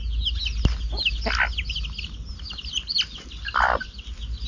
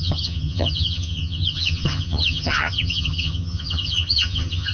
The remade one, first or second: second